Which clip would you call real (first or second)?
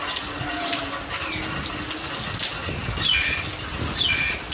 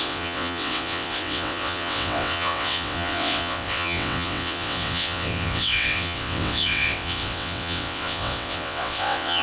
first